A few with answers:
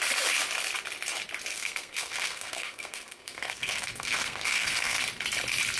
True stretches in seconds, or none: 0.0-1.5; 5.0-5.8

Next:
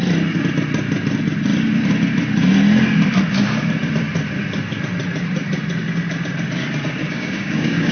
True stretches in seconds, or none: 0.0-7.0